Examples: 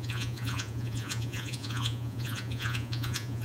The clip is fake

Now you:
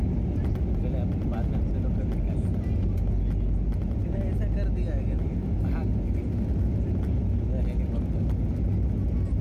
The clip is real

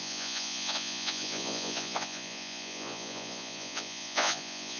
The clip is fake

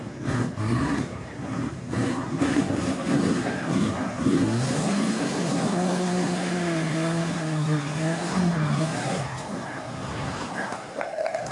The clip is fake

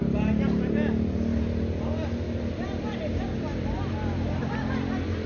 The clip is real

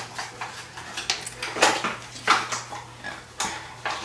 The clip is real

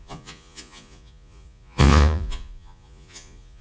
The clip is fake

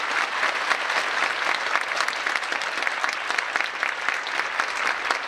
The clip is real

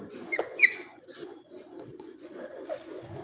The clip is fake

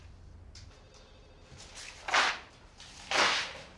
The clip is real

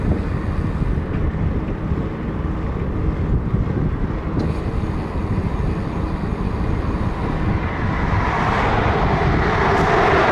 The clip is real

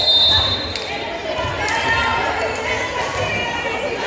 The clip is real